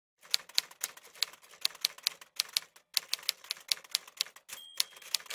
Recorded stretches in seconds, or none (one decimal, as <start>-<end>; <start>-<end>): 0.0-5.3